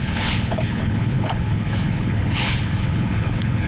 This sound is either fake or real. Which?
fake